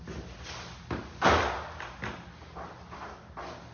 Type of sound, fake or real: real